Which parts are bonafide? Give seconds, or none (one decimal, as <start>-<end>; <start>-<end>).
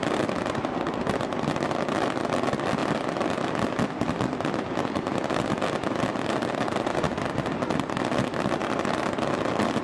0.0-9.8